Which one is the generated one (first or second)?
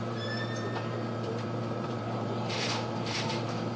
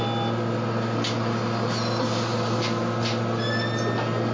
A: first